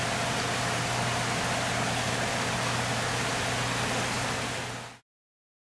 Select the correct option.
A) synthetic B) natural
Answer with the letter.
B